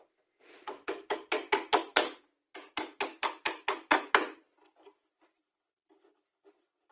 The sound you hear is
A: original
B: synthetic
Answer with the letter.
A